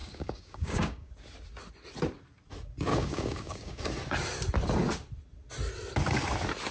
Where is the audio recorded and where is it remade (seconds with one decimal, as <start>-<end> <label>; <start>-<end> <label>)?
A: 0.0-1.1 remade; 1.1-2.9 recorded; 2.9-3.8 remade; 3.8-6.7 recorded